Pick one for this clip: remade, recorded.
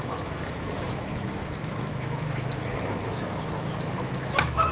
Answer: remade